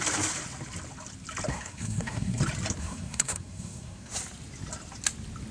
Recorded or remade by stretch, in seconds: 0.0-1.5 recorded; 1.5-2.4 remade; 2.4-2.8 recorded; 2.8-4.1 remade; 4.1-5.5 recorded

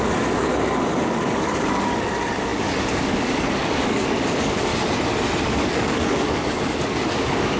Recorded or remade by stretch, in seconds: 0.0-0.5 remade; 0.5-1.0 recorded; 1.0-4.7 remade; 4.7-5.4 recorded; 5.4-7.6 remade